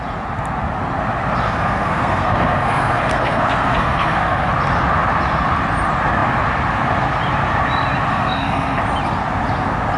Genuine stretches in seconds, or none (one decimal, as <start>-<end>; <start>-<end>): 0.0-1.4; 4.5-8.1; 8.8-10.0